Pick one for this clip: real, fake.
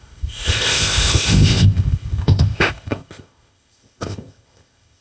fake